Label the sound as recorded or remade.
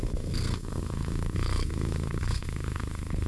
remade